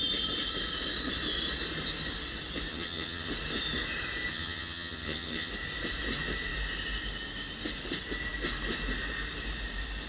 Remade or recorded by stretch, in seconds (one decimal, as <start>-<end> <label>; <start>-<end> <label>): 0.0-2.7 recorded; 2.7-3.3 remade; 3.3-4.3 recorded; 4.3-5.5 remade; 5.5-10.1 recorded